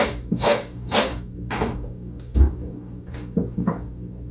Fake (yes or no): yes